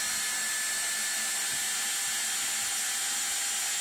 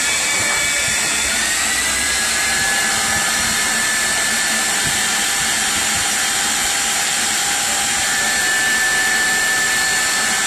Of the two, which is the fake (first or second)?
second